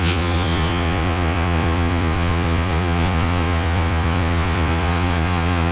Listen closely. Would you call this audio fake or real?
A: fake